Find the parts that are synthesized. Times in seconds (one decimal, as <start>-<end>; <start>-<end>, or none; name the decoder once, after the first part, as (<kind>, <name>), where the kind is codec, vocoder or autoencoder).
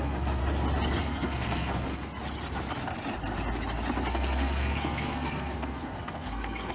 0.0-0.4 (codec, SNAC); 1.0-2.1; 4.1-6.7